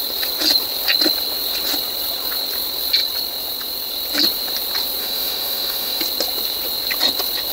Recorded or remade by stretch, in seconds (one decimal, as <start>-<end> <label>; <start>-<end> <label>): 0.0-5.0 recorded; 5.0-6.0 remade; 6.0-7.5 recorded